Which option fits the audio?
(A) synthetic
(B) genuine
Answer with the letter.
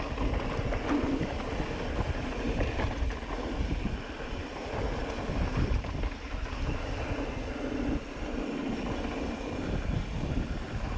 B